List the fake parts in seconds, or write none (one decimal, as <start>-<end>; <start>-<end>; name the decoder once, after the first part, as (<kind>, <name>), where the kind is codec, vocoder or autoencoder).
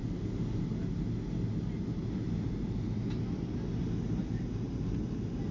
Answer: none